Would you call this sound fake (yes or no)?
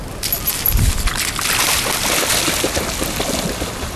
no